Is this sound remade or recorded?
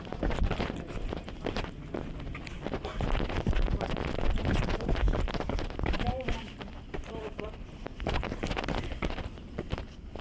recorded